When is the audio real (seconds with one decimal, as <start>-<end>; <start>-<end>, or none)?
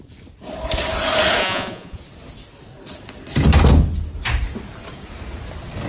0.0-1.4; 2.0-5.9